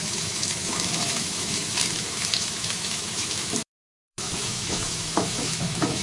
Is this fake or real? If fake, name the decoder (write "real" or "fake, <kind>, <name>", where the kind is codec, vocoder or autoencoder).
fake, autoencoder, DAC-VAE